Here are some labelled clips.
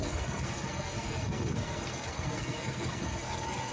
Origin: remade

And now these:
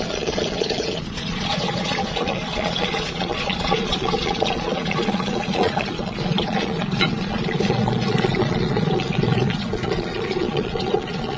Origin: remade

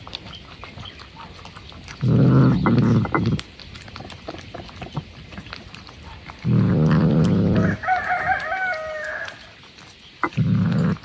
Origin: recorded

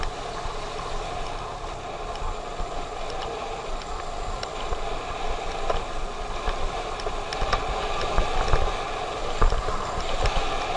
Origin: recorded